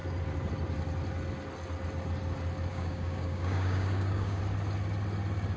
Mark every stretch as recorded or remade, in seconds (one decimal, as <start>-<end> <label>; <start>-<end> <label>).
0.0-2.7 recorded; 2.7-4.4 remade; 4.4-5.6 recorded